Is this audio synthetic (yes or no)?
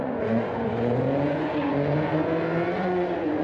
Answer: yes